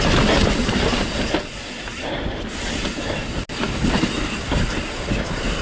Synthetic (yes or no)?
no